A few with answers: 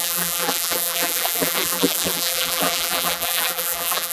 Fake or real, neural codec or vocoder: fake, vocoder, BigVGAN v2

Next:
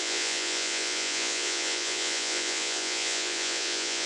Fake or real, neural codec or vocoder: fake, vocoder, Vocos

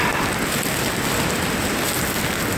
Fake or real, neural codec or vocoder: real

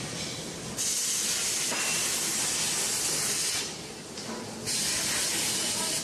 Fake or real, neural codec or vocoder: real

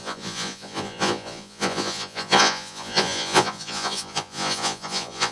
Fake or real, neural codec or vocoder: fake, vocoder, Vocos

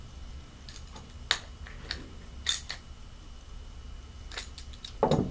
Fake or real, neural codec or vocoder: real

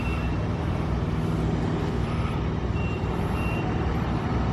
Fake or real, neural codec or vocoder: fake, vocoder, BigVGAN v2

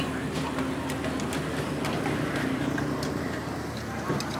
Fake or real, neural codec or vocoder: fake, vocoder, BigVGAN v2